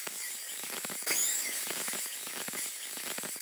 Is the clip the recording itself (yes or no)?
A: no